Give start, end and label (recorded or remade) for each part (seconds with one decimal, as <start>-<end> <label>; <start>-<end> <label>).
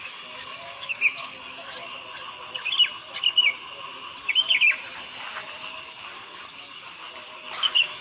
0.0-1.8 remade; 1.8-5.7 recorded; 5.7-7.0 remade; 7.0-7.5 recorded; 7.5-8.0 remade